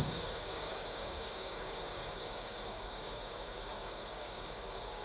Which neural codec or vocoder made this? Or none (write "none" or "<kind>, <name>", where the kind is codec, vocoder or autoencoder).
codec, DAC